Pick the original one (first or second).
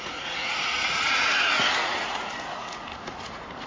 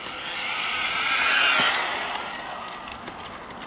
second